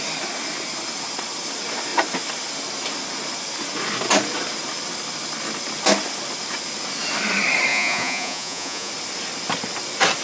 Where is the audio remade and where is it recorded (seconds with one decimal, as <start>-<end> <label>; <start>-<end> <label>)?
0.0-7.7 recorded; 7.7-8.9 remade; 8.9-10.2 recorded